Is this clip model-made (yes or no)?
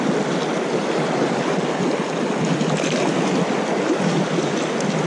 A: no